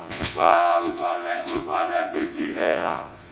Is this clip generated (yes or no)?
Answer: yes